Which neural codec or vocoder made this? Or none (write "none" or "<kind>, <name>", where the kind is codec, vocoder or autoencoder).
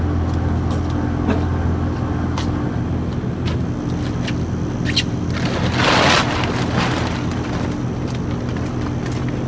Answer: none